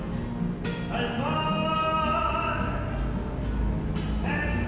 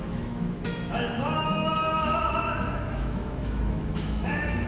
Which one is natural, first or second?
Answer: first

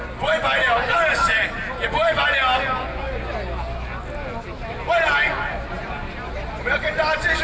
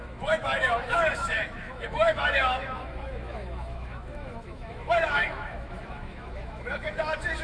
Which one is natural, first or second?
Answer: first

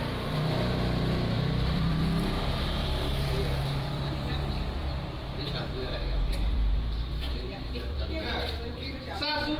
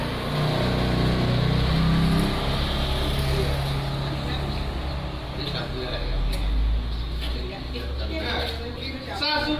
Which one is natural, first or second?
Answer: second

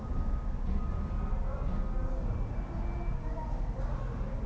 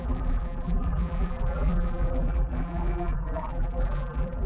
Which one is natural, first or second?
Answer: first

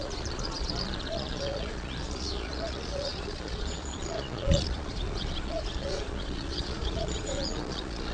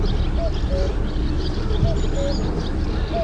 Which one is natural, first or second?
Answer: second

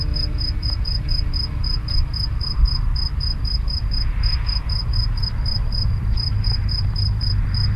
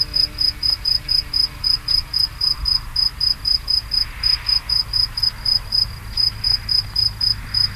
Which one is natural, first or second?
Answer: second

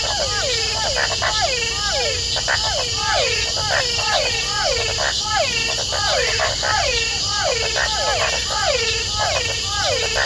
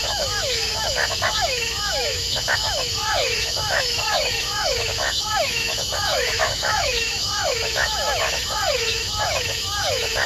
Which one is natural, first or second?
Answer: first